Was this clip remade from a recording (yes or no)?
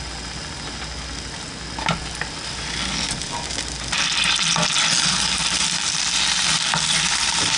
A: no